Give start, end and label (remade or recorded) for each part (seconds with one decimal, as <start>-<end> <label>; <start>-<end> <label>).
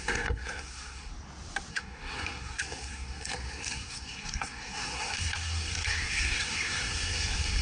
0.0-1.1 remade; 1.1-1.7 recorded; 1.7-7.6 remade